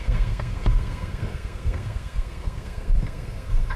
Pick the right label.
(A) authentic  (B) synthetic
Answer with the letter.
B